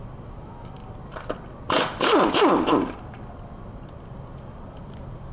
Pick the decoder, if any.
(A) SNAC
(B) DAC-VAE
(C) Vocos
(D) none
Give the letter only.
D